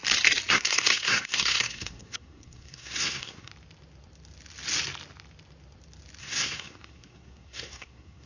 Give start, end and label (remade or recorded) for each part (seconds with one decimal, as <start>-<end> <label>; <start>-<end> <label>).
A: 0.0-0.5 recorded; 0.5-3.5 remade; 3.5-6.2 recorded; 6.2-8.3 remade